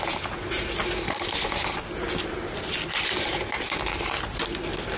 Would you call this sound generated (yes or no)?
no